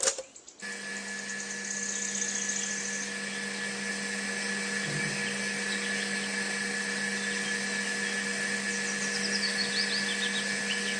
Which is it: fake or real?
real